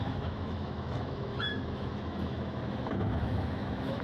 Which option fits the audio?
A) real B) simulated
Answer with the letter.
B